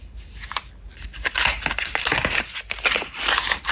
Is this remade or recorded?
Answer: recorded